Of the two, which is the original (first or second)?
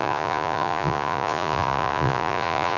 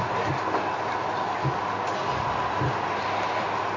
second